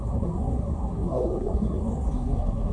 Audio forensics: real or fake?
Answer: fake